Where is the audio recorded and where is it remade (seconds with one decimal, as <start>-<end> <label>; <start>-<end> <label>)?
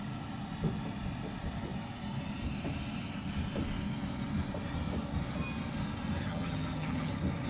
0.0-6.2 recorded; 6.2-7.1 remade; 7.1-7.5 recorded